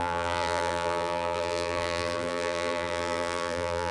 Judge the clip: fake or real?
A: fake